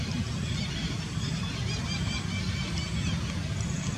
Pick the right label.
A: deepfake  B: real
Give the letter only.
B